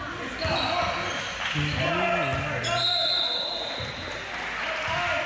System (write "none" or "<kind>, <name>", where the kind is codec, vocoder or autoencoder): none